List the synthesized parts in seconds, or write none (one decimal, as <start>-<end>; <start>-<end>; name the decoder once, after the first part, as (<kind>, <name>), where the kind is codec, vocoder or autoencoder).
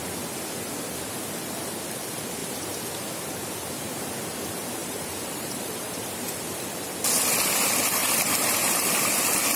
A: 2.4-2.9 (vocoder, BigVGAN v2); 4.8-6.9; 8.0-8.9